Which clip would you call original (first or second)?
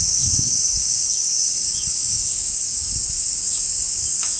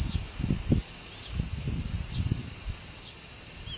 second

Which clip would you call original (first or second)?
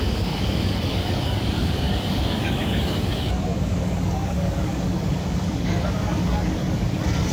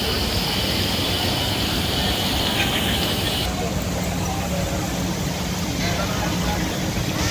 second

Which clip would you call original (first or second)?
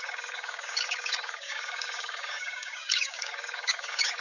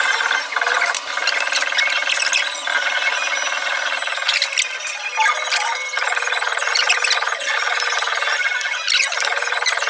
second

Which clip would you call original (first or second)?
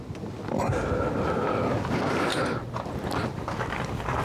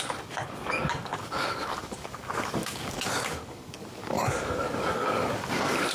first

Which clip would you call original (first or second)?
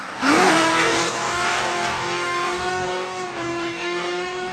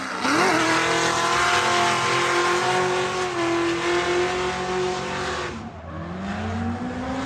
second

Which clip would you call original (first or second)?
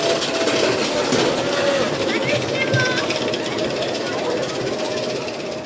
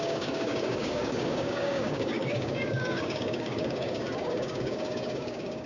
first